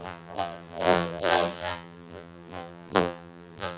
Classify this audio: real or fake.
fake